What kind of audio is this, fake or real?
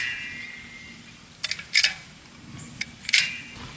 real